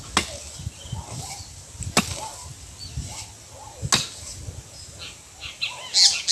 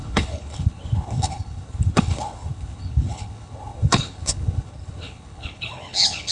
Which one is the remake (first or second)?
second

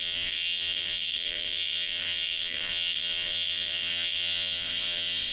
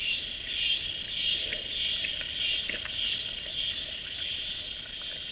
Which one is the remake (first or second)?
first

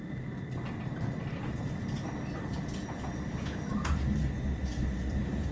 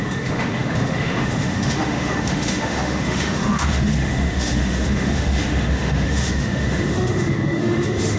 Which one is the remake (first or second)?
second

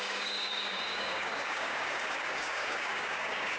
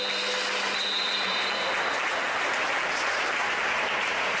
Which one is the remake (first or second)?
first